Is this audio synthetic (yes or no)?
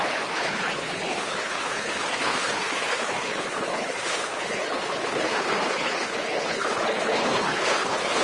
yes